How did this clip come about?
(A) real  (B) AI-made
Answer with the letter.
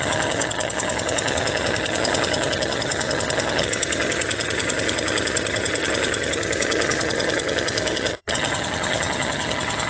B